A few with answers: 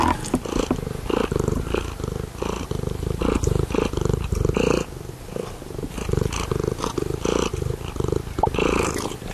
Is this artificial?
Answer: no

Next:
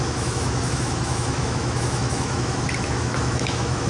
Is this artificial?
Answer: yes